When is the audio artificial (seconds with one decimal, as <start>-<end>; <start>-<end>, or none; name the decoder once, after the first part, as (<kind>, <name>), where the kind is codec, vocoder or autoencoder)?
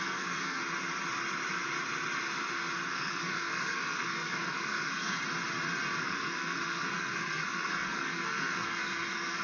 0.0-0.6 (codec, SNAC); 2.9-5.2; 6.0-9.4